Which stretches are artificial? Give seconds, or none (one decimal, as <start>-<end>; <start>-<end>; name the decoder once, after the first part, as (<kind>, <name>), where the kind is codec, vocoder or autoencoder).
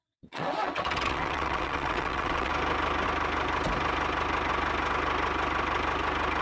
0.0-2.5 (vocoder, WaveNeXt)